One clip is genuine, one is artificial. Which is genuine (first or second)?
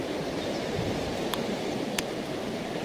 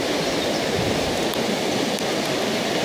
second